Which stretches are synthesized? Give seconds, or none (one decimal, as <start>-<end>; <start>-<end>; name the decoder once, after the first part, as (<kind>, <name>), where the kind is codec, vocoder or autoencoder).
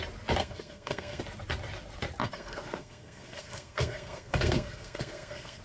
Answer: 0.4-1.2 (codec, SNAC); 2.2-5.6